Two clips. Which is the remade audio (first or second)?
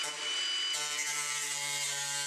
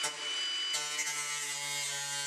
first